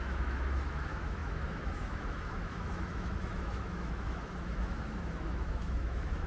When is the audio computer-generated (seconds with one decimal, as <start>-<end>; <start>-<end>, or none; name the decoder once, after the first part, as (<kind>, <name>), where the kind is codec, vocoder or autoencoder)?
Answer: 0.0-6.3 (autoencoder, DAC-VAE)